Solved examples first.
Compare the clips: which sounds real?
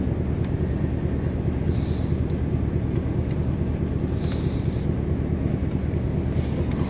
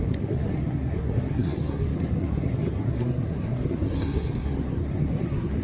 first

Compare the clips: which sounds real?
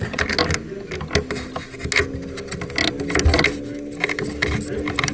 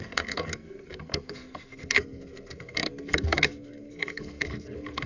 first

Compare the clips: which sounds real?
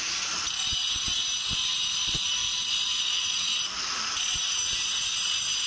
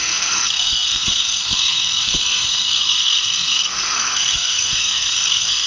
first